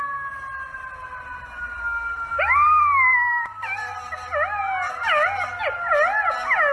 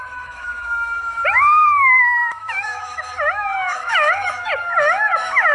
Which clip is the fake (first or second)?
second